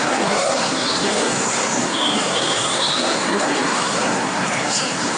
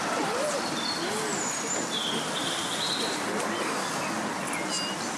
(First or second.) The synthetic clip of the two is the first